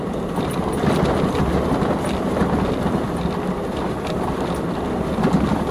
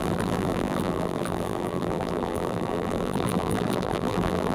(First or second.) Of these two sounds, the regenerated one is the second